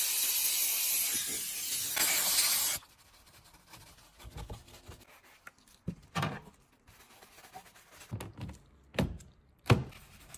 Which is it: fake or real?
real